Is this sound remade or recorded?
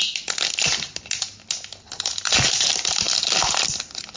recorded